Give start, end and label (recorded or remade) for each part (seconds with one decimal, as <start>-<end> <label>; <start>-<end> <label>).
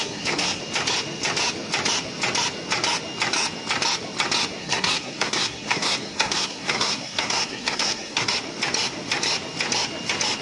0.0-0.6 remade; 0.6-4.6 recorded; 4.6-8.3 remade; 8.3-10.4 recorded